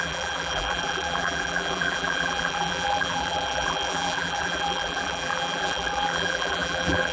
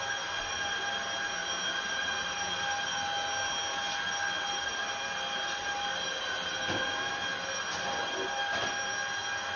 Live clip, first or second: second